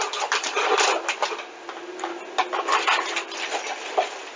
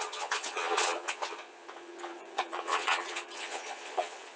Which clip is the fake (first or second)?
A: second